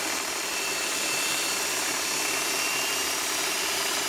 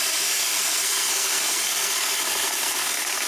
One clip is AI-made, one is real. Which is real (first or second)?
first